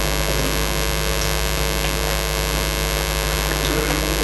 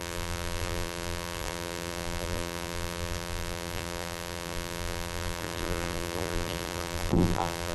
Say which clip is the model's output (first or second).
second